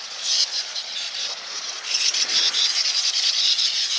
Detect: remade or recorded remade